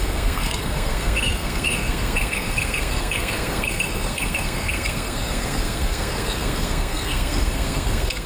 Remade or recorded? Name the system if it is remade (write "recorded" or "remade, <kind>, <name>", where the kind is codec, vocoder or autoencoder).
remade, codec, SNAC